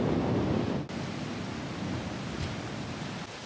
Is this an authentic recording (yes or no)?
yes